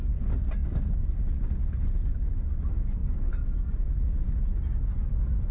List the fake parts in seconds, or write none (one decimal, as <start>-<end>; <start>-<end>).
none